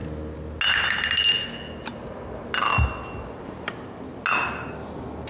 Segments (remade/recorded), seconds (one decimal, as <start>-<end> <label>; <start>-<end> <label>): 0.0-5.3 recorded

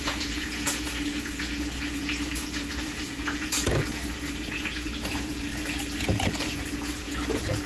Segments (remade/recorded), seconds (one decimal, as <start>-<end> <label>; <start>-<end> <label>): 0.0-5.5 remade; 5.5-6.0 recorded; 6.0-7.7 remade

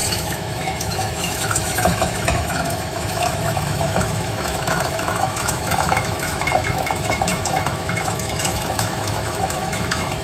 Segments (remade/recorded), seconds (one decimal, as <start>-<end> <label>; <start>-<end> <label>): 0.0-10.2 remade

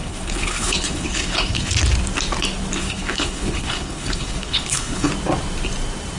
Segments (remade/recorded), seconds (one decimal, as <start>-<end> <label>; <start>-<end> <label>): 0.0-1.7 remade; 1.7-2.8 recorded; 2.8-5.1 remade; 5.1-6.2 recorded